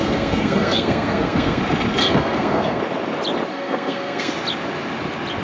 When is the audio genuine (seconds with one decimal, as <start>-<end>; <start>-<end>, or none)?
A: 1.6-2.0; 2.8-3.5; 4.3-5.4